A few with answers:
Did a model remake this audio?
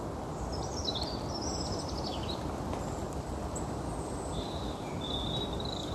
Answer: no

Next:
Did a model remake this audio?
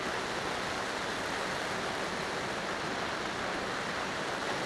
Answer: no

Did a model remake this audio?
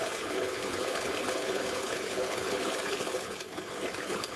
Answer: yes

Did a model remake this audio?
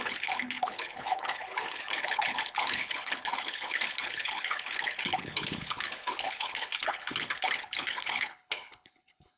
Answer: yes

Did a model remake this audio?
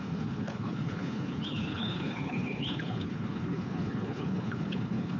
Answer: yes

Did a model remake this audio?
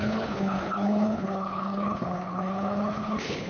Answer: yes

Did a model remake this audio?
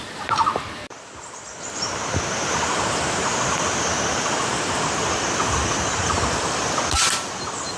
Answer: no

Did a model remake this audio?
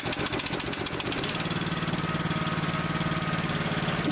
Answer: no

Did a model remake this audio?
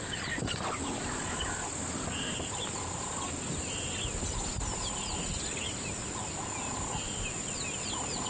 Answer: no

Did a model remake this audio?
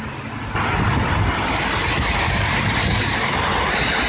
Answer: no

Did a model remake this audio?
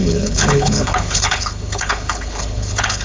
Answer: yes